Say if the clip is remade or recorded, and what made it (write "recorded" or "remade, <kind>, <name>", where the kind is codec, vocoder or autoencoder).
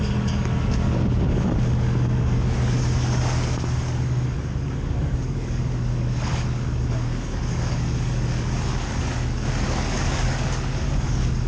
remade, codec, DAC